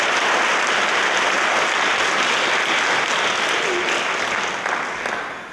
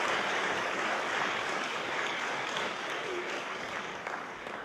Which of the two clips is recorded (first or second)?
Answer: first